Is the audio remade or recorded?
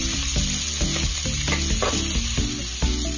recorded